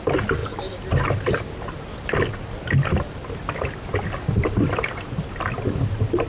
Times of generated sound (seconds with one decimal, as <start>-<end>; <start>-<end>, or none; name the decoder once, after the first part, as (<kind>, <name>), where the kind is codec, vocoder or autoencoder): 0.4-1.4 (vocoder, BigVGAN v2)